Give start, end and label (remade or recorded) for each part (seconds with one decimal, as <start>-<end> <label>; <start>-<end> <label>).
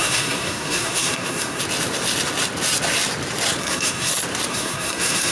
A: 0.0-1.6 remade; 1.6-3.6 recorded; 3.6-4.1 remade; 4.1-4.5 recorded; 4.5-5.3 remade